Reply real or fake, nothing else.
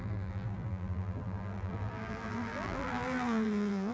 fake